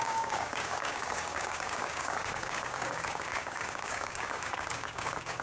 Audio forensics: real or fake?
fake